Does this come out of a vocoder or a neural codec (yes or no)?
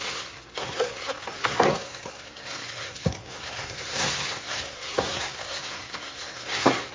yes